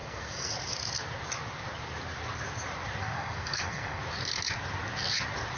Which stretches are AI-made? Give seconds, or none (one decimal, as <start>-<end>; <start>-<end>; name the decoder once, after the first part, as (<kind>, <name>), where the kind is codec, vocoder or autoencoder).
0.0-0.5 (codec, SNAC); 3.0-4.0